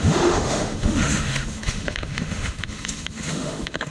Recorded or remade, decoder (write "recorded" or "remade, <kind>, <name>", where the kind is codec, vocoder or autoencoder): remade, autoencoder, DAC-VAE